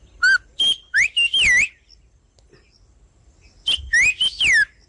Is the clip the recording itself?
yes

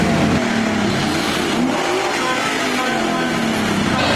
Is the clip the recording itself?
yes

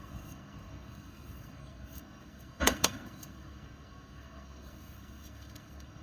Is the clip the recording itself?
no